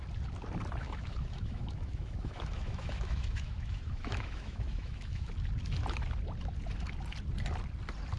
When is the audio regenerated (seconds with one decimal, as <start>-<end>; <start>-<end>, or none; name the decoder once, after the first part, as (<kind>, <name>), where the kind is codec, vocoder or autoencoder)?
0.8-5.3 (autoencoder, DAC-VAE)